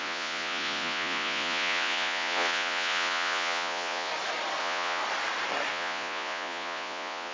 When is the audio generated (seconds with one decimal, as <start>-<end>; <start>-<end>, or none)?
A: 0.0-4.1; 4.6-5.0; 5.7-7.3